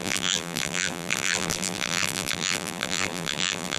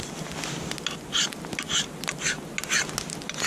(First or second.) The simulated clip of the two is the first